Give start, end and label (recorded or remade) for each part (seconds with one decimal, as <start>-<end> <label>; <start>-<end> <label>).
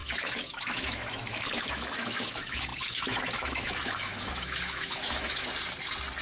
0.0-5.5 remade; 5.5-6.2 recorded